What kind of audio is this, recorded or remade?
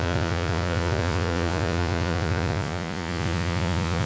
remade